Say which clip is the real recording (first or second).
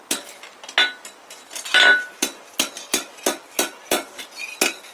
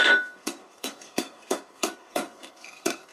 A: first